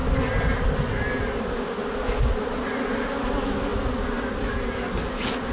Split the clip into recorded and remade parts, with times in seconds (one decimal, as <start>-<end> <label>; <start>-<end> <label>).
0.0-5.5 recorded